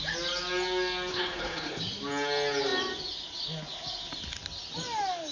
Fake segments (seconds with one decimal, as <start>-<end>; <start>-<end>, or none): 1.1-1.8